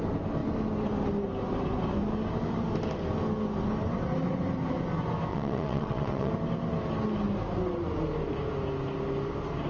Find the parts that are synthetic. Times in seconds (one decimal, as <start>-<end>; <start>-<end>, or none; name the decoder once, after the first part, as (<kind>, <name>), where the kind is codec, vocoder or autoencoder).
5.3-6.3 (vocoder, WaveNeXt)